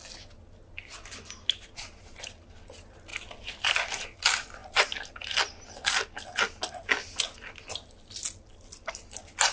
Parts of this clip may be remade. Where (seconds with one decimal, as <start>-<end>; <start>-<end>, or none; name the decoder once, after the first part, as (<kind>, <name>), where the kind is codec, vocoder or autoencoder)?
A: none